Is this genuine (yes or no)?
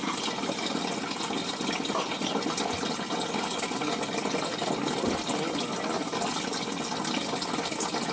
yes